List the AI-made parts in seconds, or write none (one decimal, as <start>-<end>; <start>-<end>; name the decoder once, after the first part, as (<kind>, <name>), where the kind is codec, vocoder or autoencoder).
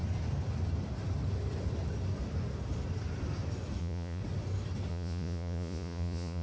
3.8-4.2 (vocoder, Vocos); 4.9-6.4